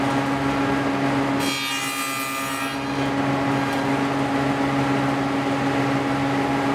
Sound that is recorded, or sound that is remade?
recorded